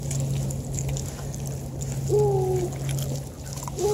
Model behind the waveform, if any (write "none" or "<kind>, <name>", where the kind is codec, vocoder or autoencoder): none